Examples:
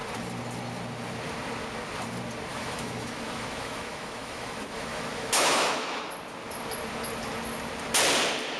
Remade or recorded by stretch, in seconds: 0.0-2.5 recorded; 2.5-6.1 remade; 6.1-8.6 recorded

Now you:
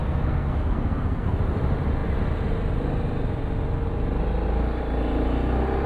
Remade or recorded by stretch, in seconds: 0.0-1.4 remade; 1.4-5.9 recorded

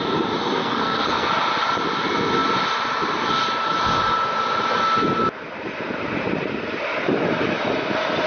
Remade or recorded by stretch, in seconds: 0.0-0.6 recorded; 0.6-1.3 remade; 1.3-8.3 recorded

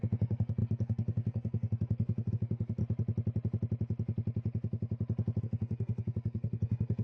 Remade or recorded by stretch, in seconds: 0.0-2.8 remade; 2.8-5.4 recorded; 5.4-7.0 remade

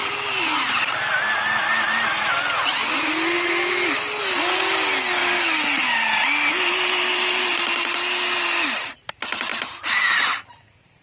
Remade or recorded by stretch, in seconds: 0.0-11.0 recorded

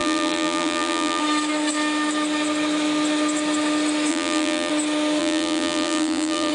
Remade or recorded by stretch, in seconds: 0.0-1.2 remade; 1.2-4.1 recorded; 4.1-4.7 remade; 4.7-5.2 recorded; 5.2-6.5 remade

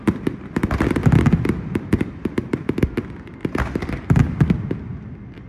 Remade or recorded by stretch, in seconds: 0.0-5.5 recorded

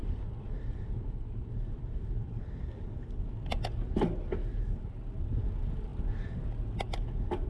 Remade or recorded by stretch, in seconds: 0.0-3.3 remade; 3.3-7.5 recorded